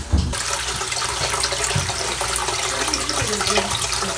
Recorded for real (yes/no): yes